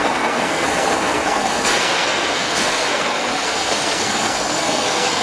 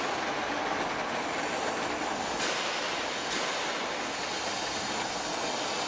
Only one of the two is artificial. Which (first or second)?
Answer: first